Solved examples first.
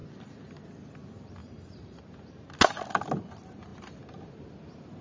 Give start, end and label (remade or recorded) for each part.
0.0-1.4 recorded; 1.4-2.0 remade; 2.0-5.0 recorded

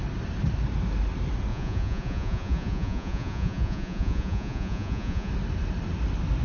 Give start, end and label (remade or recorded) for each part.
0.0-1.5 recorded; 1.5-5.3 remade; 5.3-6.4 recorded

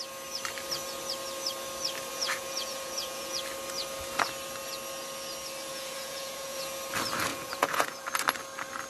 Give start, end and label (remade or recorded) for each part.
0.0-2.1 recorded; 2.1-3.4 remade; 3.4-5.7 recorded; 5.7-6.6 remade; 6.6-7.3 recorded; 7.3-8.1 remade; 8.1-8.9 recorded